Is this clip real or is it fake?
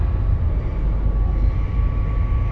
real